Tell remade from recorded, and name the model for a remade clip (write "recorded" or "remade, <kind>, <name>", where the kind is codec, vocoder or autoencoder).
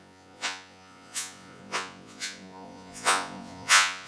remade, vocoder, Vocos